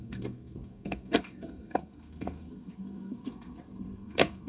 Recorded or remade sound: remade